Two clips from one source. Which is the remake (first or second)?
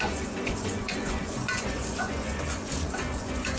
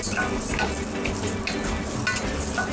first